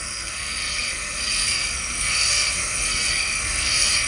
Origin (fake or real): fake